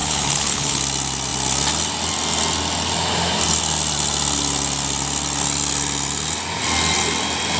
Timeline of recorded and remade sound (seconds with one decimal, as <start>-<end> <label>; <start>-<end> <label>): 0.0-0.8 remade; 0.8-7.6 recorded